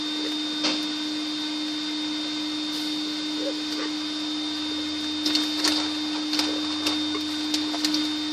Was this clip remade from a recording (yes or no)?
no